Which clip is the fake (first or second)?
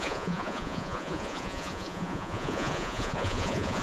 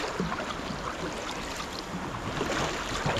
first